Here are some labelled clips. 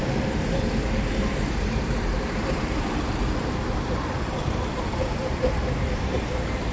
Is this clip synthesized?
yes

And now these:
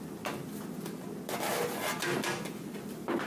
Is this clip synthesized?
no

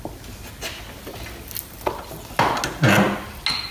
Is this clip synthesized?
no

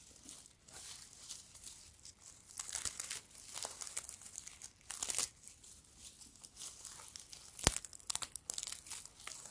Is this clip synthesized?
no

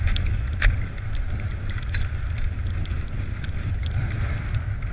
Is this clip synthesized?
no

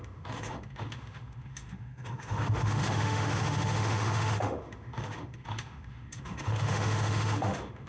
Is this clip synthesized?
yes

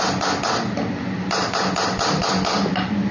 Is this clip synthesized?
no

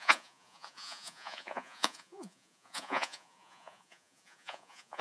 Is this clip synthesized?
yes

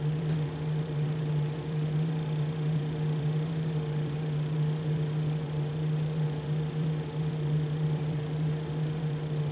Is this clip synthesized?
yes